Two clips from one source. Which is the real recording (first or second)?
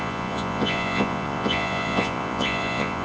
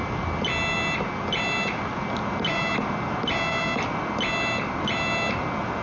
second